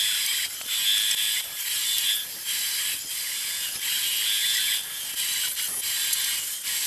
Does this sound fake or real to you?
real